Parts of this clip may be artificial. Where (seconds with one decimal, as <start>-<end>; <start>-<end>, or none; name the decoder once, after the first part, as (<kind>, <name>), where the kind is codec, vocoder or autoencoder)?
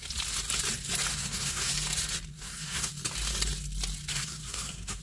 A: 1.1-1.7 (codec, SNAC); 2.3-2.9; 4.1-5.0